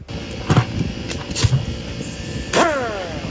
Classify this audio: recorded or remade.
recorded